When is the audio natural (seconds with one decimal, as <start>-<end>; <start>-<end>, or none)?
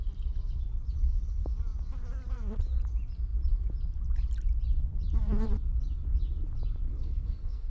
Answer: 0.0-6.9